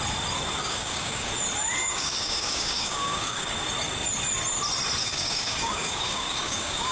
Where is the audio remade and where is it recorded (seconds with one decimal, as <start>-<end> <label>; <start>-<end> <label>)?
0.0-0.6 recorded; 0.6-1.3 remade; 1.3-1.8 recorded; 1.8-3.5 remade; 3.5-5.0 recorded; 5.0-6.9 remade